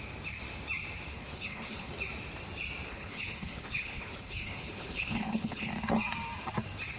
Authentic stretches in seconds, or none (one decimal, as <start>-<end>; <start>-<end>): 0.0-1.1; 1.9-2.9; 5.7-7.0